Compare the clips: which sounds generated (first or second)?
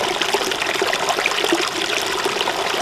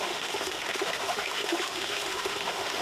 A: second